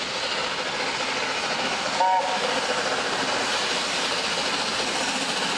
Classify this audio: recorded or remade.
recorded